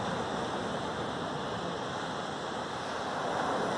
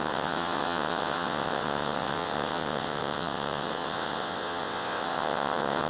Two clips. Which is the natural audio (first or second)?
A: first